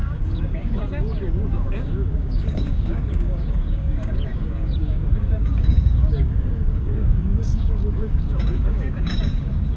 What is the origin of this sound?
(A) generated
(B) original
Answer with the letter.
A